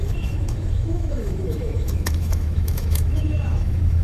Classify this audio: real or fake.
fake